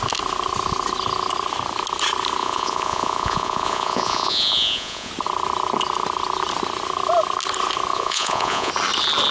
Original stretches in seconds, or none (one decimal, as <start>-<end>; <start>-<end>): 0.0-2.4; 5.1-7.9; 8.7-9.3